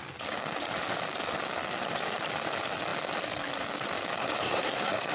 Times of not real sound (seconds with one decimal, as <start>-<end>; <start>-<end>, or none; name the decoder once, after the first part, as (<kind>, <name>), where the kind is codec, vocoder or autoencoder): 4.2-5.1 (codec, SNAC)